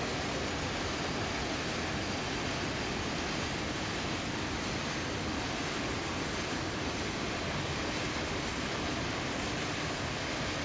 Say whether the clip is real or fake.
real